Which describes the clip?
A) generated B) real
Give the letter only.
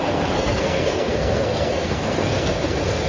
A